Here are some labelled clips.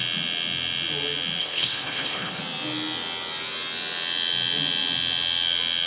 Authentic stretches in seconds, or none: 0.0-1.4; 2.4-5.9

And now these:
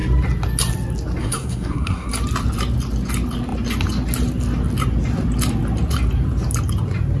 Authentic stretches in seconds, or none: 0.0-1.2; 2.1-7.2

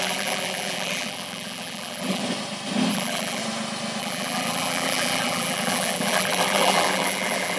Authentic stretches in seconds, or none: 2.2-2.9; 3.4-4.0